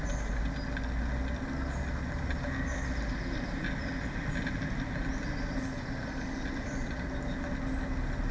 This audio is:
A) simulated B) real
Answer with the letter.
B